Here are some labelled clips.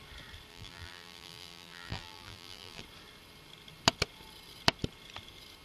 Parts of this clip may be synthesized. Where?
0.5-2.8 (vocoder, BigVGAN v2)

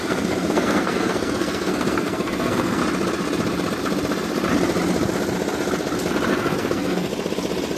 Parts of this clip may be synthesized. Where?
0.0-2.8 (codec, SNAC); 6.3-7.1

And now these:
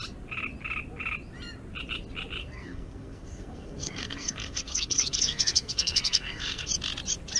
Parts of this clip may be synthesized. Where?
2.4-6.7 (codec, SNAC)

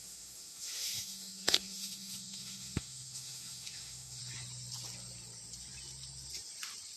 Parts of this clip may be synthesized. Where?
0.0-4.2 (autoencoder, DAC-VAE)

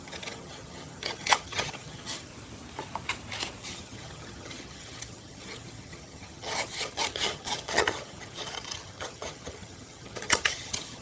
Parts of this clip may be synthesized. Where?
0.0-2.3 (vocoder, HiFi-GAN); 3.6-11.0

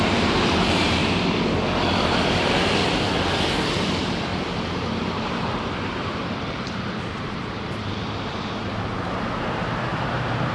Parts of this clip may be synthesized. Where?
0.0-1.0 (vocoder, BigVGAN v2); 2.4-4.3; 5.0-10.5

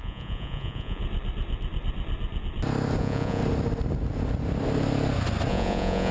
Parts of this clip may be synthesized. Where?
0.0-1.0 (vocoder, Vocos); 3.0-3.4; 5.5-6.1